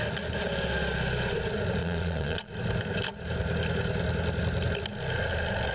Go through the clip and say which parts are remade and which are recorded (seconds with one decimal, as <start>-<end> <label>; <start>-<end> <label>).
0.0-1.8 recorded; 1.8-2.5 remade; 2.5-5.7 recorded